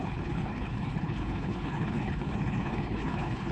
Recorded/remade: remade